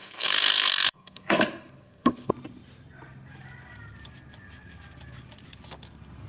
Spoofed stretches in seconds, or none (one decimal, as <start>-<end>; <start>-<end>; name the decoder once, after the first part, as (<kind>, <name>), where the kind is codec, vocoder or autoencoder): 0.0-2.3 (codec, SNAC)